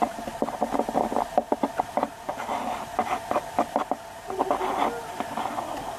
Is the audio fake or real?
real